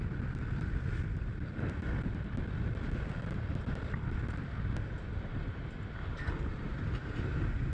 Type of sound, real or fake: real